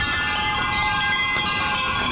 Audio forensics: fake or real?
fake